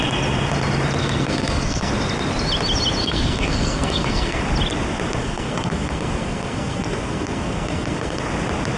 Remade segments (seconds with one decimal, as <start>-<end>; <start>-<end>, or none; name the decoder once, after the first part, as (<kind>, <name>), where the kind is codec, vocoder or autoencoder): 1.0-1.9 (codec, SNAC); 3.0-4.4; 5.2-8.2